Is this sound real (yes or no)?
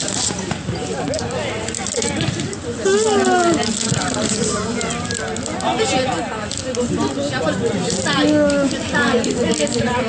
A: yes